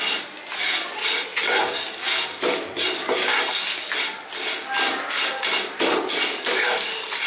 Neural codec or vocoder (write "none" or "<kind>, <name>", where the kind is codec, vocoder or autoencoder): none